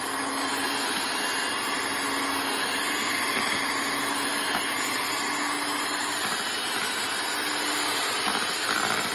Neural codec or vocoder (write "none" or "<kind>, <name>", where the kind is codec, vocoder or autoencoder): none